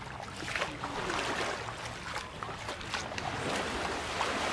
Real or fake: real